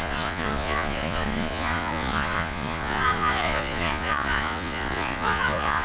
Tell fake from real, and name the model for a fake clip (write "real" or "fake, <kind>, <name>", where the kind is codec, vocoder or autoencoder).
fake, vocoder, Vocos